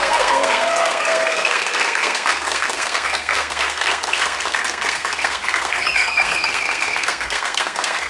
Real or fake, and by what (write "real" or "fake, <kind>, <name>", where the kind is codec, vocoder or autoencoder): fake, codec, SNAC